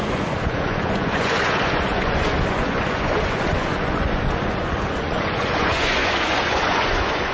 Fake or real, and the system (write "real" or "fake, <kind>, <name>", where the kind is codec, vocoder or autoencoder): fake, vocoder, Vocos